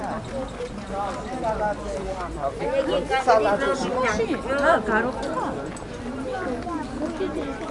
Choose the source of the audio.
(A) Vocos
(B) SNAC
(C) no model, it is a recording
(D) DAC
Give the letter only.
C